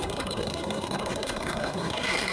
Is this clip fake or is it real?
fake